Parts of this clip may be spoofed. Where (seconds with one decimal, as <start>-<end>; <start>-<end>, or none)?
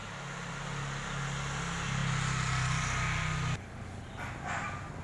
none